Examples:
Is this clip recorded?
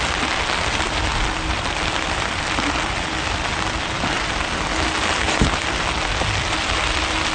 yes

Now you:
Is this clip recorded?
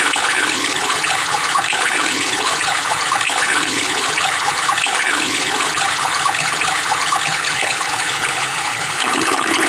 no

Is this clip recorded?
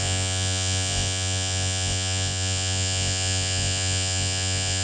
no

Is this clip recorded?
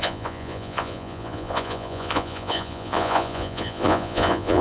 no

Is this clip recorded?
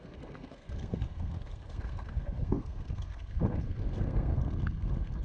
no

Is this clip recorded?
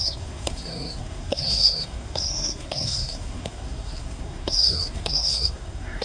no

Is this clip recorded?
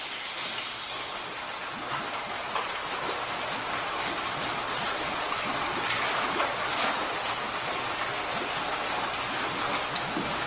yes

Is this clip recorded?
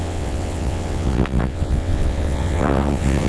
no